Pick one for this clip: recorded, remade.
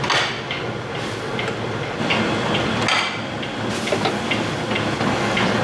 recorded